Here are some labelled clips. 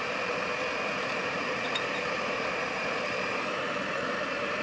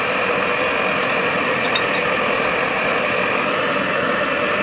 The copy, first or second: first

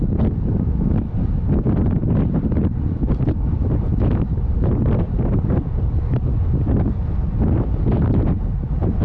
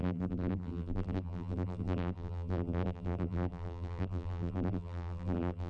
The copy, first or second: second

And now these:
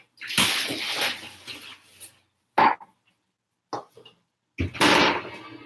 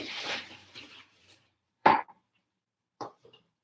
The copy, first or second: second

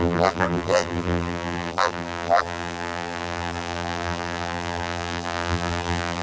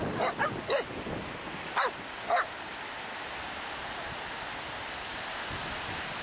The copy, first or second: first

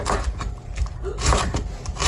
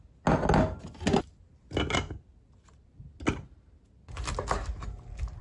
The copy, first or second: first